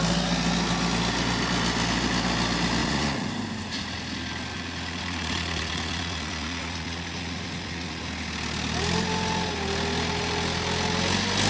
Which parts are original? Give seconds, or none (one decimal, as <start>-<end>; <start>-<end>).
0.0-2.8; 3.3-4.5; 8.0-11.5